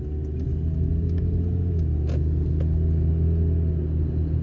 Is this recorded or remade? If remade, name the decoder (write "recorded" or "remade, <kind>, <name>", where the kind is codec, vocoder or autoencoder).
recorded